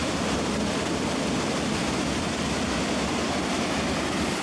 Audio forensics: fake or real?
real